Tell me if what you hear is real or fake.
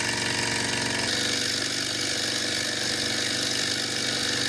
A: real